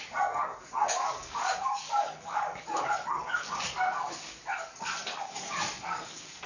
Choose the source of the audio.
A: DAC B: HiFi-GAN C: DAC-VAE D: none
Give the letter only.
A